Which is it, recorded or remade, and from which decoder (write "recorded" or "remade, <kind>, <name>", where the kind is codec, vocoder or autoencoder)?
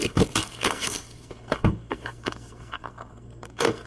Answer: remade, codec, SNAC